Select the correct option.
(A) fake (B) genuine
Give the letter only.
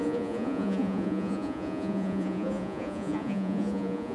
A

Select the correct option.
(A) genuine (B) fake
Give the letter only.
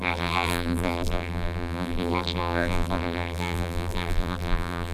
B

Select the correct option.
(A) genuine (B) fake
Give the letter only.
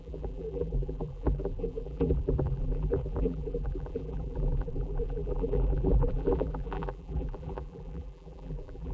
B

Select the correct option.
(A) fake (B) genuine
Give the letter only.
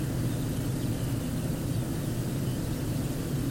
B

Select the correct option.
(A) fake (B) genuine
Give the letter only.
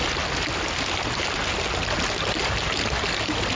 B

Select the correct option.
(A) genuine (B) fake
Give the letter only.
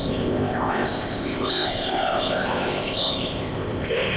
B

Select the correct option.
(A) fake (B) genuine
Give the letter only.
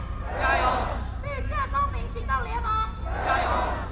B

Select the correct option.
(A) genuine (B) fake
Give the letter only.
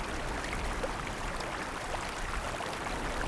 A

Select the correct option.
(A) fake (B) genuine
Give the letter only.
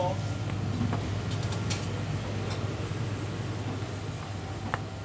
B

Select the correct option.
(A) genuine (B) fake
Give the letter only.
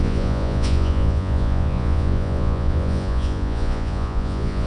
B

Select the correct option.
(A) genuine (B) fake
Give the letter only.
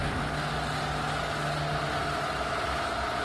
A